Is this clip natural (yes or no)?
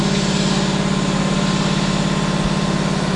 yes